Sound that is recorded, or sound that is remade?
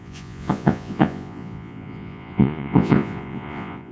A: remade